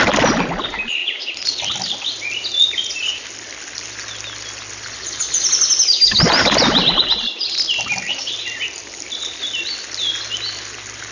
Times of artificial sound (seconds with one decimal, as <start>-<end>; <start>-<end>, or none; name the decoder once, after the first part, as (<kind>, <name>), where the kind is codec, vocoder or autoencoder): 1.0-1.6 (vocoder, Vocos); 2.6-3.2